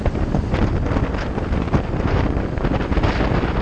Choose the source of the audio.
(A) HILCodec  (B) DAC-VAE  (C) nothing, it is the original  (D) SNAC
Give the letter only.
C